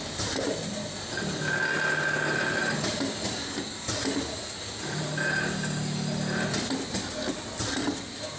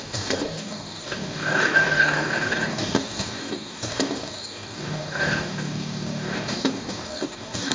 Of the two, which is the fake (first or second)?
second